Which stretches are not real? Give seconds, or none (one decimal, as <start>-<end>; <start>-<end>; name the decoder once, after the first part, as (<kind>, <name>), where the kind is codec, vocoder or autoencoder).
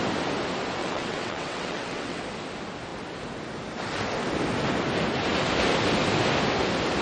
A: 0.8-2.2 (vocoder, WaveNeXt)